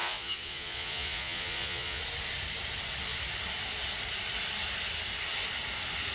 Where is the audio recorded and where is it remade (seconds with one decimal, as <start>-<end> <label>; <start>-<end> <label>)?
0.0-2.0 remade; 2.0-6.1 recorded